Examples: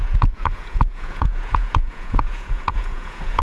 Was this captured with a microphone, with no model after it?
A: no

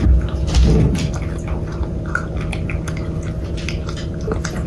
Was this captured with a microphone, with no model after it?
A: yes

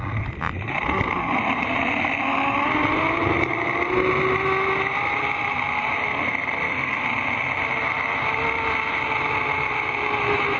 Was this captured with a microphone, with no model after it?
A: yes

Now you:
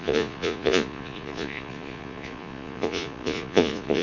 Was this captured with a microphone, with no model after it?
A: no